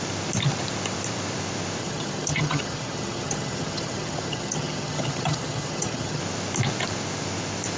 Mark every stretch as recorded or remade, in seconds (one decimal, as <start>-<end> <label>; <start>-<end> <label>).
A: 0.0-1.8 recorded; 1.8-6.2 remade; 6.2-7.8 recorded